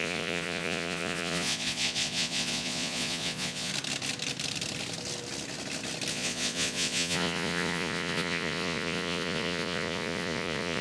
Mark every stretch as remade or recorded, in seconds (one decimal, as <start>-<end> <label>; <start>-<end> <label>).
0.0-3.7 remade; 3.7-6.1 recorded; 6.1-10.8 remade